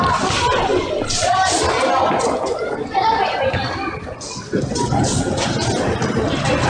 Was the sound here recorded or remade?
recorded